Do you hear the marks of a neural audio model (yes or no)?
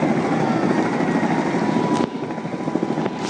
no